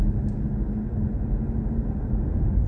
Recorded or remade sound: recorded